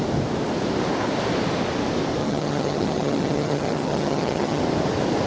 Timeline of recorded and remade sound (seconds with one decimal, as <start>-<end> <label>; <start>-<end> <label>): 0.0-2.2 recorded; 2.2-4.6 remade; 4.6-5.3 recorded